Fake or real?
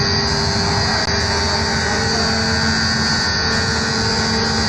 real